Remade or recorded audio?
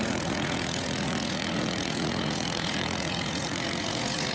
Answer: remade